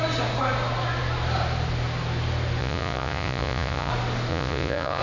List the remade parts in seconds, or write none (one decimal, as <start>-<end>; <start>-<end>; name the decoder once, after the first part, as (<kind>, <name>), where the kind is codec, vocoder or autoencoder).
2.6-3.9 (vocoder, Vocos); 4.3-5.0